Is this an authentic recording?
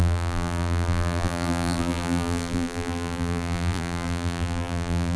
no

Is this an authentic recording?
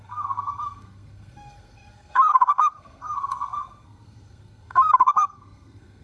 no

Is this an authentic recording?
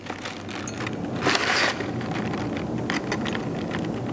yes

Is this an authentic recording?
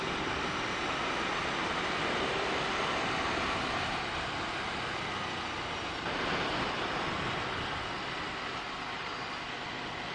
yes